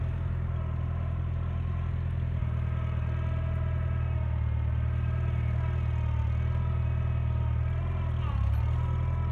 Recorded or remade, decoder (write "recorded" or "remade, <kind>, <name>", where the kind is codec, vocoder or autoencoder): recorded